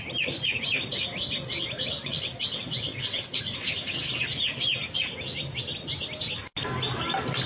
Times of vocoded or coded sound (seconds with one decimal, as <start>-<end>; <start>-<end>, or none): 2.0-3.7